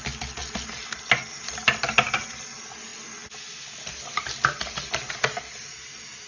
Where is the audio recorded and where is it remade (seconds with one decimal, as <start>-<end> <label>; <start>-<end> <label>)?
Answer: 0.0-6.3 recorded